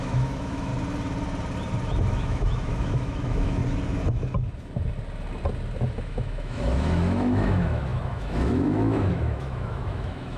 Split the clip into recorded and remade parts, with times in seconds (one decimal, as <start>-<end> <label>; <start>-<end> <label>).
0.0-0.7 remade; 0.7-2.1 recorded; 2.1-3.6 remade; 3.6-6.0 recorded; 6.0-10.4 remade